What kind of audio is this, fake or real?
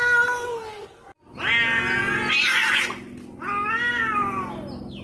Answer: real